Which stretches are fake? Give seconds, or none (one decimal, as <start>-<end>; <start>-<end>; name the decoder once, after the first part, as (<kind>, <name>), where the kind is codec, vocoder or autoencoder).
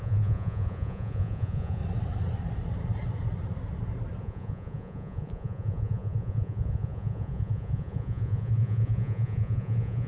0.0-1.8 (vocoder, Vocos); 4.2-10.1